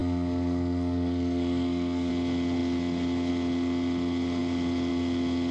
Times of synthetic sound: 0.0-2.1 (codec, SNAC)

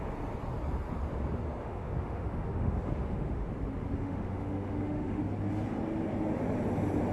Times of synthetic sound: 1.6-3.5 (autoencoder, DAC-VAE); 4.0-5.2

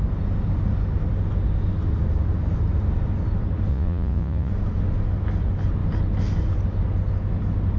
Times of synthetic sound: 3.7-4.5 (vocoder, Vocos)

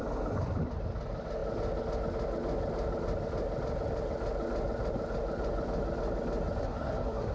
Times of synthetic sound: 6.6-7.3 (codec, SNAC)

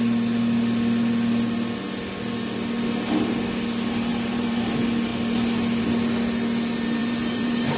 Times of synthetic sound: 4.1-4.6 (vocoder, BigVGAN v2); 7.0-7.8

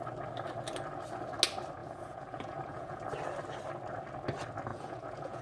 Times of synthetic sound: 1.8-3.0 (vocoder, Vocos); 4.7-5.4